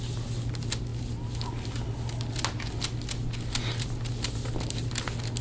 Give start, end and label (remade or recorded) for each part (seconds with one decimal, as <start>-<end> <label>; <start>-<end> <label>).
0.0-5.4 recorded